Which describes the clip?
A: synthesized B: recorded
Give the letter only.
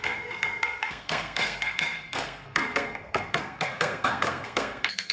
A